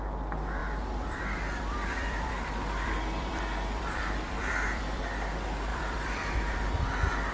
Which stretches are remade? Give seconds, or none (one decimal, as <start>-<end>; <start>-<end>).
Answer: 0.6-5.0; 5.7-6.8